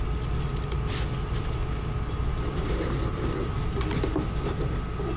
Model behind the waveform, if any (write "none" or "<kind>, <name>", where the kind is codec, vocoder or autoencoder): vocoder, BigVGAN v2